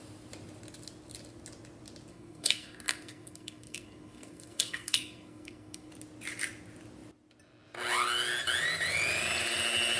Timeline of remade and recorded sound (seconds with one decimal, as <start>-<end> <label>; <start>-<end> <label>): 0.0-2.1 recorded; 2.1-5.9 remade; 5.9-10.0 recorded